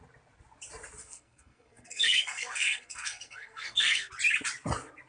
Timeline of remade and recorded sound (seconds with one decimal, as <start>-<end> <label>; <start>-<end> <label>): 0.0-1.0 recorded; 1.0-4.1 remade; 4.1-5.1 recorded